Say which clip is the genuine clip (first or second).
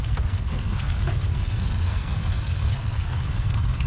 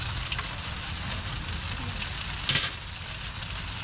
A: second